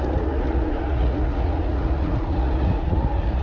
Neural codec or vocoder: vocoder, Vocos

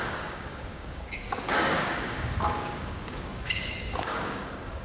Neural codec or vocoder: codec, DAC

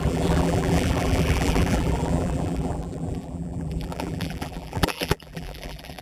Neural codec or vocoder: vocoder, BigVGAN v2